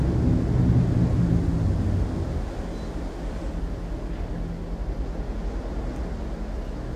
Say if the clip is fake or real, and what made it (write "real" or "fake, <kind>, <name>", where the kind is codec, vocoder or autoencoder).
real